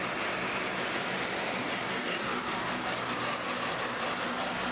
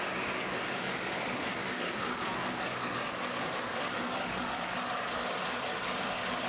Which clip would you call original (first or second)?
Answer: first